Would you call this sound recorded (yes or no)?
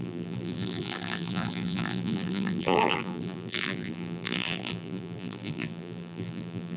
no